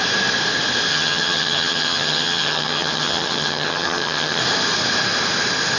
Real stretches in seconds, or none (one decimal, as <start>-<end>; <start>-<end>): 0.0-0.9; 4.4-5.8